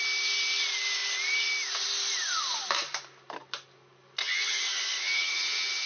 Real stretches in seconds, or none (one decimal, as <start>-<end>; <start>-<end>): 0.0-4.2